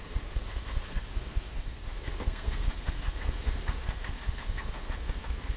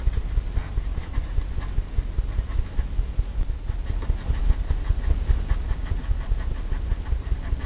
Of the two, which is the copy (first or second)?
first